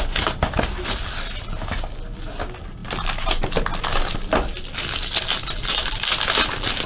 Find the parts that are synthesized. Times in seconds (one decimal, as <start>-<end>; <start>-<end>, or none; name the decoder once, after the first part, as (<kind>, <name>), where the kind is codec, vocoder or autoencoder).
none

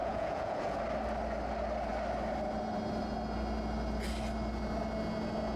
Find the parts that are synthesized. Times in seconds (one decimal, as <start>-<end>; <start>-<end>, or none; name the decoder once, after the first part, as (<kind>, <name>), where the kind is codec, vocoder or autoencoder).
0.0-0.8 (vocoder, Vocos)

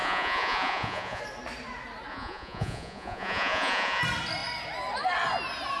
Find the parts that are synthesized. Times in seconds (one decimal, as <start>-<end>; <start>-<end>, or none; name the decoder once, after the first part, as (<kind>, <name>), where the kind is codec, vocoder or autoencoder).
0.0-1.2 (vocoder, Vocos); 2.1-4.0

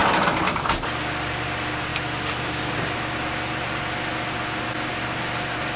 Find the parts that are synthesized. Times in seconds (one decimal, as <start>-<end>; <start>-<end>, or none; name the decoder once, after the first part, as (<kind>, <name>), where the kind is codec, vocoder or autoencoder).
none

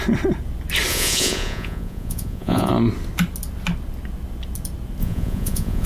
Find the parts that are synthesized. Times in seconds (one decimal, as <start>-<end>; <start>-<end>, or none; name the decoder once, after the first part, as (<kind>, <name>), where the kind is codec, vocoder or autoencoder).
0.9-2.7 (vocoder, Vocos); 5.0-5.9